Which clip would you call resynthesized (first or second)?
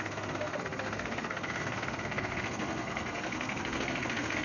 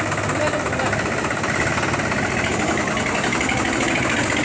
first